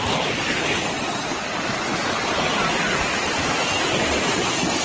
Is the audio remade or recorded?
recorded